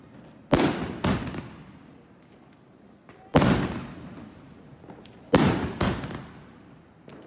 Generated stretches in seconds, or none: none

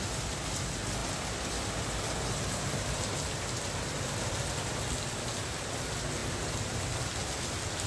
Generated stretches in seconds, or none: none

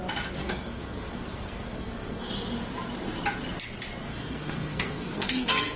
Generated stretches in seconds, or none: 0.4-2.3 (codec, SNAC); 4.0-5.8

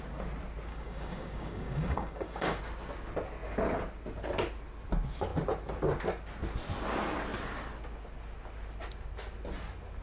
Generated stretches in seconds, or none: 0.7-2.6 (codec, DAC)

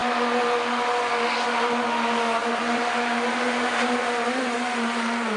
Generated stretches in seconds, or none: 2.4-5.4 (vocoder, BigVGAN v2)

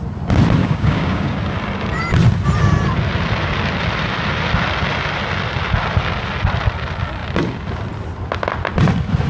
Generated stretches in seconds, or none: 0.6-1.4 (codec, DAC)